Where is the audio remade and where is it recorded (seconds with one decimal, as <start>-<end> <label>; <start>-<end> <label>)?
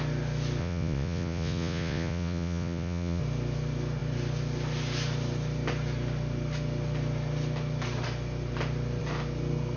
0.0-0.6 recorded; 0.6-3.2 remade; 3.2-9.8 recorded